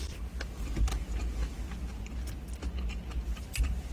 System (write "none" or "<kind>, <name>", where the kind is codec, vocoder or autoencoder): none